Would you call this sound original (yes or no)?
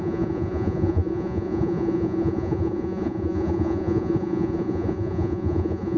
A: no